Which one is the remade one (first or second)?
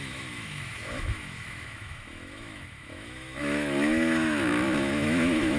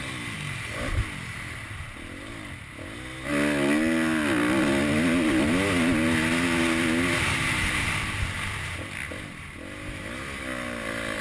first